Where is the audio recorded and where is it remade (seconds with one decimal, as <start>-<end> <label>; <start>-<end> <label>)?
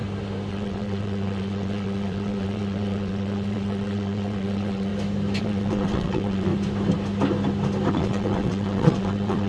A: 0.0-0.5 recorded; 0.5-4.9 remade; 4.9-5.4 recorded; 5.4-6.5 remade; 6.5-7.9 recorded; 7.9-9.5 remade